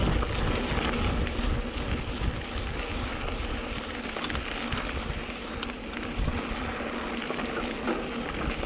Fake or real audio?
real